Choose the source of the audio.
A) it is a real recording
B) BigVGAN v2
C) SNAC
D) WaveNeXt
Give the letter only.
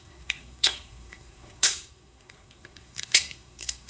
C